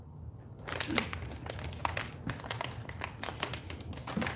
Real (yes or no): yes